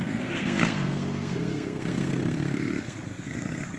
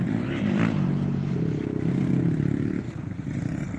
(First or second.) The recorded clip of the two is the second